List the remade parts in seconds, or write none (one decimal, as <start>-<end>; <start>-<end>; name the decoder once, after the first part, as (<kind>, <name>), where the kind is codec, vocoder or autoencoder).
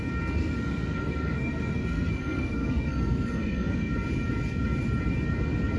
0.4-3.9 (codec, SNAC)